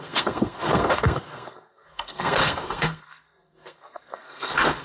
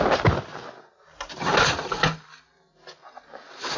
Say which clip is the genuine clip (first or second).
second